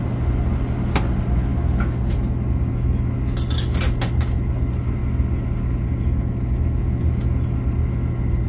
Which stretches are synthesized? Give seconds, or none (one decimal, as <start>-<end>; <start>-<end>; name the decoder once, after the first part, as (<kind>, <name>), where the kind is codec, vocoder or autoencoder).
none